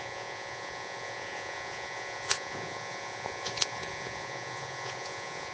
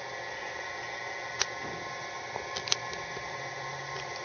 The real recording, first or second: second